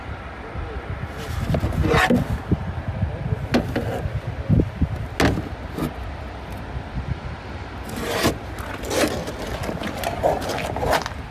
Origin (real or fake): real